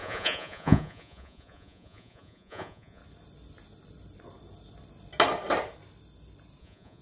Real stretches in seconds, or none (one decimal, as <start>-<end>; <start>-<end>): 3.0-6.6